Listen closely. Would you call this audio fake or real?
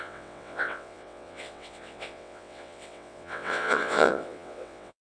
fake